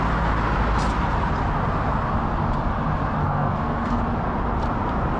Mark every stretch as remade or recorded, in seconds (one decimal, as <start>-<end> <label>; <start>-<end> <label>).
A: 0.0-3.2 recorded; 3.2-4.0 remade; 4.0-5.2 recorded